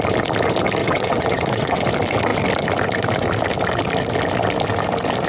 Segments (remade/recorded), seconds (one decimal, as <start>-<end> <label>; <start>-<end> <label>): 0.0-0.8 recorded; 0.8-1.8 remade; 1.8-5.3 recorded